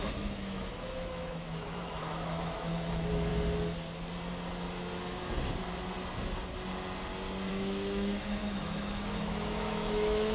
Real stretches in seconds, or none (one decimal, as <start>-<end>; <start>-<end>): 3.3-7.5